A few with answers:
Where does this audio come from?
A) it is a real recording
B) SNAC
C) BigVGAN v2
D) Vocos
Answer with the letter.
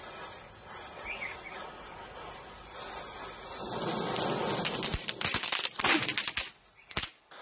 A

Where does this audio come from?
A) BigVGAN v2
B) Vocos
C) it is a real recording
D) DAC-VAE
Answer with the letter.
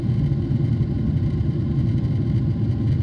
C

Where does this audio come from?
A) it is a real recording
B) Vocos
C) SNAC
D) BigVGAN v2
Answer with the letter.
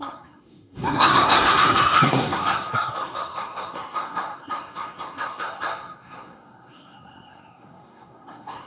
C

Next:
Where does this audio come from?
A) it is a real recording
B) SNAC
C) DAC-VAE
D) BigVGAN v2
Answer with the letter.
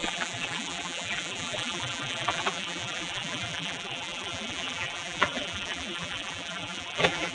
D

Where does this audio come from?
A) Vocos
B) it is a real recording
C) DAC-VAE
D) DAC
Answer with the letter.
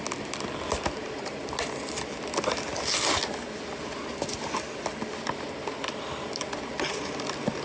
B